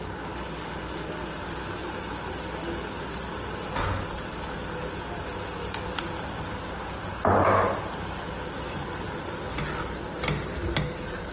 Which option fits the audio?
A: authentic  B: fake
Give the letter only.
A